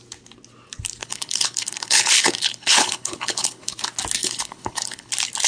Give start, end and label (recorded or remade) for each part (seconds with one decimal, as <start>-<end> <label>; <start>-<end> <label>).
0.0-1.0 recorded; 1.0-3.7 remade; 3.7-4.2 recorded; 4.2-5.1 remade; 5.1-5.5 recorded